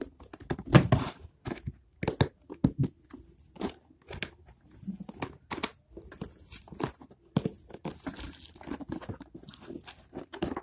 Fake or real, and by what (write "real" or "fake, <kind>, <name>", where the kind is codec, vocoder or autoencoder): real